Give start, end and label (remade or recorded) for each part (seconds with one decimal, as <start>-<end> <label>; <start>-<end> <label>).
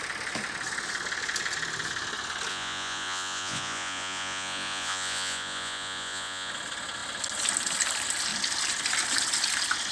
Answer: 0.0-2.5 recorded; 2.5-6.5 remade; 6.5-9.9 recorded